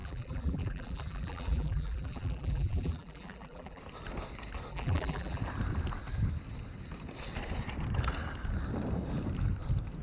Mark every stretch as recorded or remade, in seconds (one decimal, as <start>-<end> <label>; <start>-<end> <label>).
0.0-3.8 remade; 3.8-4.7 recorded; 4.7-5.4 remade; 5.4-10.0 recorded

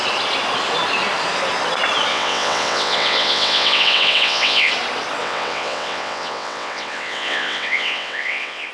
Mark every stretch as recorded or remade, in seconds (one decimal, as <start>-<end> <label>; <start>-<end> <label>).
0.0-2.1 recorded; 2.1-4.7 remade; 4.7-5.2 recorded; 5.2-8.7 remade

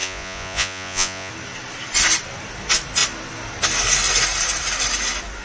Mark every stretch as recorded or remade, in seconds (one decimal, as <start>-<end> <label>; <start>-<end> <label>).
0.0-1.3 remade; 1.3-5.4 recorded

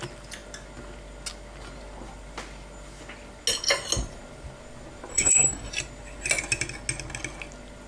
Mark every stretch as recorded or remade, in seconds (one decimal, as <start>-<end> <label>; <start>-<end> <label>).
0.0-5.1 recorded; 5.1-5.7 remade; 5.7-7.9 recorded

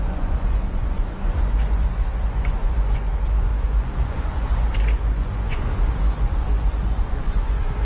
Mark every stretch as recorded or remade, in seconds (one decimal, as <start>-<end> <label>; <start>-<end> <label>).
0.0-7.8 remade